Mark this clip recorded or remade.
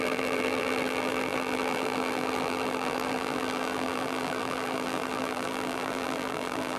remade